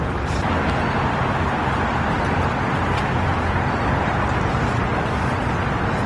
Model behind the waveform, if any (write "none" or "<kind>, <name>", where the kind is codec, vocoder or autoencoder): none